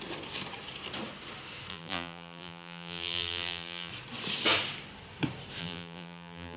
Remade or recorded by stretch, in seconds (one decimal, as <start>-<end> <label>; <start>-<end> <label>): 0.0-1.7 recorded; 1.7-3.9 remade; 3.9-5.6 recorded; 5.6-6.6 remade